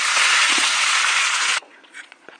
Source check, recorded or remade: remade